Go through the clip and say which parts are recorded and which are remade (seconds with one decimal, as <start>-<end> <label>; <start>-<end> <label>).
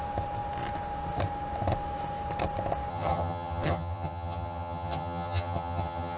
0.0-2.9 recorded; 2.9-6.2 remade